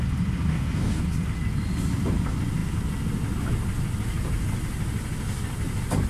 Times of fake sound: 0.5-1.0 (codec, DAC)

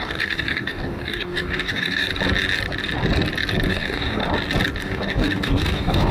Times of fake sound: 0.0-2.1 (codec, DAC); 3.7-4.2; 4.8-6.1

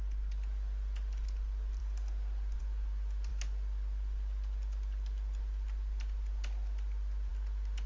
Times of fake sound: none

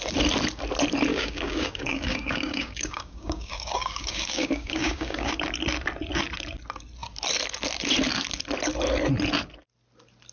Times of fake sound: 1.1-5.3 (codec, DAC)

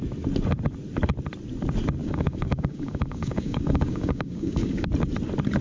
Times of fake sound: 2.0-4.9 (codec, DAC)

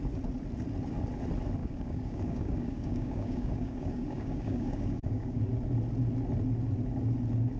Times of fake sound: 1.6-5.4 (codec, DAC)